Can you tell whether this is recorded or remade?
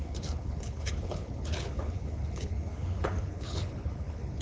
remade